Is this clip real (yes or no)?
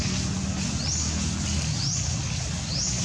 yes